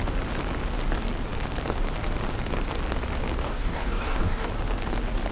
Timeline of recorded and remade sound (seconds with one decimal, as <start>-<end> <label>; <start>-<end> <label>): 0.0-3.4 recorded; 3.4-4.5 remade; 4.5-5.3 recorded